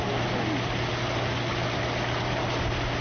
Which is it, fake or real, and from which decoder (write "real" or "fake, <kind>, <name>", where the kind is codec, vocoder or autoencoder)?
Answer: real